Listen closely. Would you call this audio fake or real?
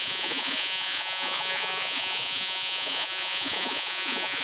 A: fake